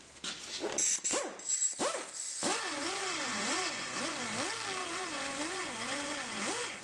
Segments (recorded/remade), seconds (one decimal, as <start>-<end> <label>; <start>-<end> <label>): 0.0-2.5 recorded; 2.5-4.2 remade; 4.2-4.8 recorded; 4.8-6.8 remade